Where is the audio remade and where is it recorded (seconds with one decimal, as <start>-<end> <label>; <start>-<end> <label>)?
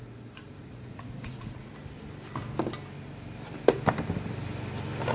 0.0-0.6 recorded; 0.6-1.7 remade; 1.7-5.1 recorded